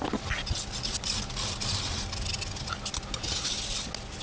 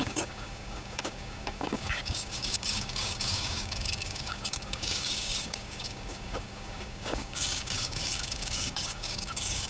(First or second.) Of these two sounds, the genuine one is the first